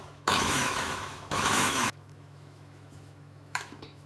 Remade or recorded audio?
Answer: remade